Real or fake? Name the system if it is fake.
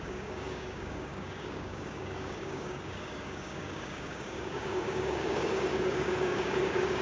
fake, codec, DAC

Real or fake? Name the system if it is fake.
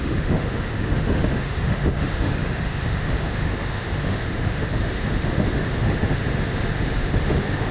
fake, autoencoder, DAC-VAE